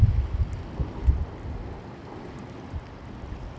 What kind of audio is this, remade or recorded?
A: recorded